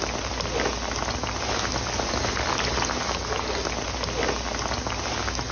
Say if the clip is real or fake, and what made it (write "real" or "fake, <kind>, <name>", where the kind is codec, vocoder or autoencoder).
real